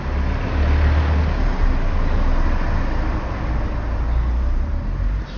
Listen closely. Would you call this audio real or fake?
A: real